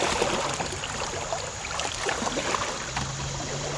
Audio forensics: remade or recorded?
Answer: recorded